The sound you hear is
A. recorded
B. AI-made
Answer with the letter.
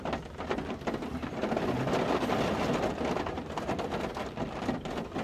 A